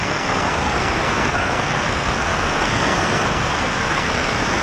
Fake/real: fake